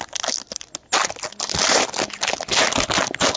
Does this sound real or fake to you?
real